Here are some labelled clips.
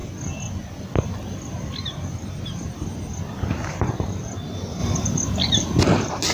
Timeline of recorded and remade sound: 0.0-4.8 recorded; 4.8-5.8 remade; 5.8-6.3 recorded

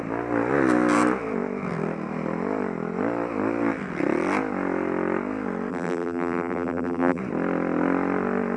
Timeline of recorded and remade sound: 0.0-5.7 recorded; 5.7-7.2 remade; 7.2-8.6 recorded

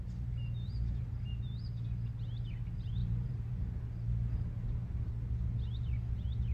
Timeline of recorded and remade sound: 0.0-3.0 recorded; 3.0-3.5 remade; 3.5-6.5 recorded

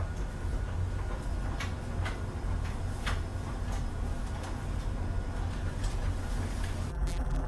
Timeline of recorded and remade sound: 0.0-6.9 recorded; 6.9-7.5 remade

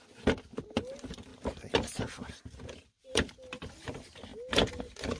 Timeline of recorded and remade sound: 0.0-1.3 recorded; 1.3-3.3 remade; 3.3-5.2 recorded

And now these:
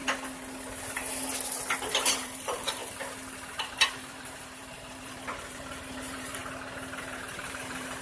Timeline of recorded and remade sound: 0.0-1.9 recorded; 1.9-2.8 remade; 2.8-3.7 recorded; 3.7-6.4 remade; 6.4-7.0 recorded; 7.0-8.0 remade